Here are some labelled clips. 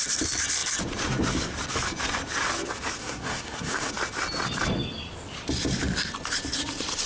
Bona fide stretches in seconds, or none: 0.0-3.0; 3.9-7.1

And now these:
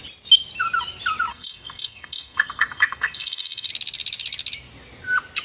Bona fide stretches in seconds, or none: 0.0-1.3; 3.7-5.4

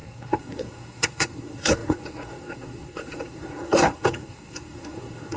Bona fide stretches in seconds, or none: none

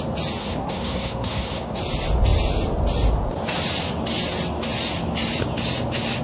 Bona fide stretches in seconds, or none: 0.0-0.4; 1.8-6.2

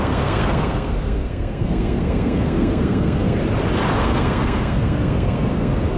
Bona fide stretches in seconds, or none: 3.4-4.0

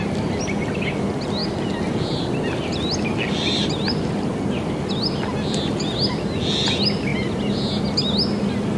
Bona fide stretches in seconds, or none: 0.0-8.8

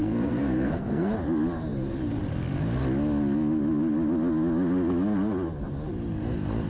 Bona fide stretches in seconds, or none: 1.1-6.7

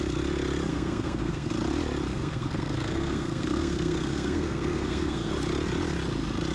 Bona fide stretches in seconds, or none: 0.0-0.7; 1.5-2.1; 5.3-6.5